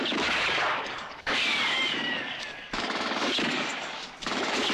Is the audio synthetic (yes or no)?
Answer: yes